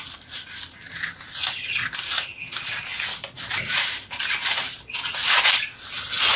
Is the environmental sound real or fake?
real